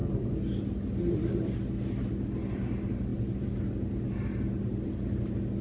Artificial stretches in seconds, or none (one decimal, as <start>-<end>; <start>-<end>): none